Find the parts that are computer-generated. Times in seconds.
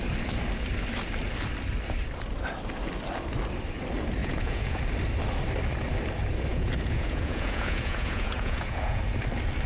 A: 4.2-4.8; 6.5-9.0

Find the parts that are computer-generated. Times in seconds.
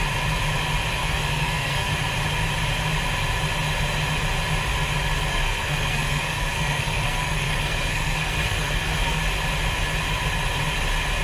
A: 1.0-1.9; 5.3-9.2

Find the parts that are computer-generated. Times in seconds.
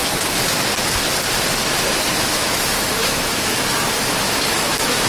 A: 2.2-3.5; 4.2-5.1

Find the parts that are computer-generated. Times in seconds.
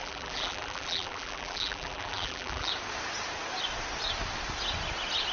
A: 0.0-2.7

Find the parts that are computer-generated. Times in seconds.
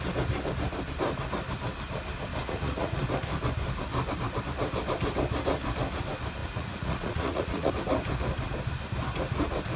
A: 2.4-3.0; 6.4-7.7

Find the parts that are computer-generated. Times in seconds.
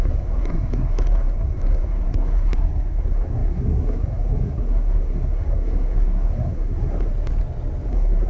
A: 0.0-7.1; 7.9-8.3